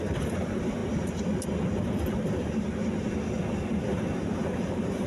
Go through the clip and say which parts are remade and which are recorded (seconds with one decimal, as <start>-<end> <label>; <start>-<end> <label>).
0.0-0.8 remade; 0.8-3.5 recorded; 3.5-5.1 remade

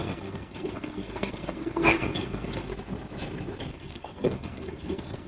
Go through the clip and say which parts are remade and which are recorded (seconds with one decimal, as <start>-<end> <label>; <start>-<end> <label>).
0.0-2.7 remade; 2.7-3.7 recorded; 3.7-5.3 remade